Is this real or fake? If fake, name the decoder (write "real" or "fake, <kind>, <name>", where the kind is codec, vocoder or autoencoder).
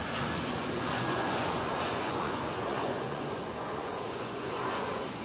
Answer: fake, vocoder, Vocos